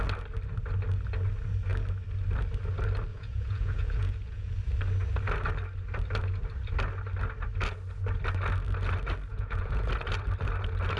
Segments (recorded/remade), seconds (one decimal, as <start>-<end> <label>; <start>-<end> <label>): 0.0-3.1 recorded; 3.1-4.5 remade; 4.5-9.3 recorded; 9.3-9.9 remade; 9.9-11.0 recorded